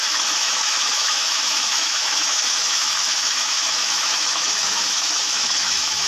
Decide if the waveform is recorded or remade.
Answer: remade